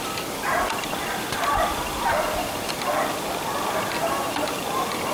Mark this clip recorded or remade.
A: recorded